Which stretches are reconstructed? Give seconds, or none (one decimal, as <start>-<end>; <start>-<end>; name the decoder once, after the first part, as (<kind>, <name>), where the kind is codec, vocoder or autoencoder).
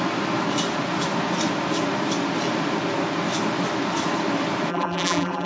4.7-5.5 (vocoder, BigVGAN v2)